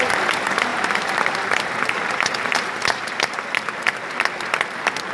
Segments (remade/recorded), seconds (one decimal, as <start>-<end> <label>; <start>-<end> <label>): 0.0-0.7 recorded; 0.7-3.8 remade; 3.8-5.1 recorded